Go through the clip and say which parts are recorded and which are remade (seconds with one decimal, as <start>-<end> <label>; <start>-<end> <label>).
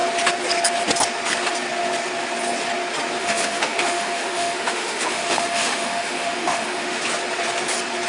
0.0-3.2 recorded; 3.2-7.0 remade; 7.0-8.1 recorded